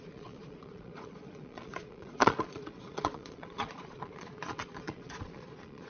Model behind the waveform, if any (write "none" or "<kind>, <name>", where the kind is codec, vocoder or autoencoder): vocoder, Vocos